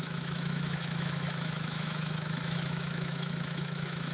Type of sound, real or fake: fake